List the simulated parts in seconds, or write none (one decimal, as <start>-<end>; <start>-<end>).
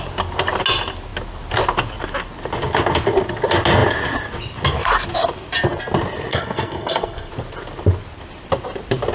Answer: 6.3-7.3